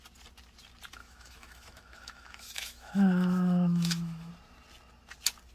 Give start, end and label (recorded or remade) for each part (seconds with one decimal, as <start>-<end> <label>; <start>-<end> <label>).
0.0-1.0 recorded; 1.0-4.3 remade; 4.3-5.5 recorded